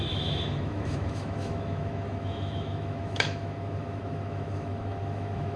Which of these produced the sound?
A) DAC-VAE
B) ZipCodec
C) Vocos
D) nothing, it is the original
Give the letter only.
A